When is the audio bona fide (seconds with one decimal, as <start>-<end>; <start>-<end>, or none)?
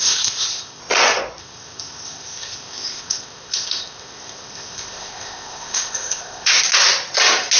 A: 0.8-1.4; 6.6-7.6